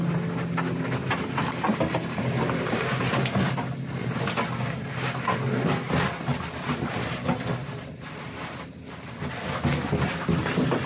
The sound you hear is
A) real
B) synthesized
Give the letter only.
A